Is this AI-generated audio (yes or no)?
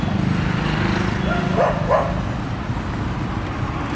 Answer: no